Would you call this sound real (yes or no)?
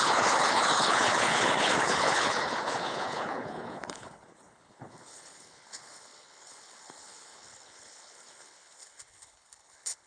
no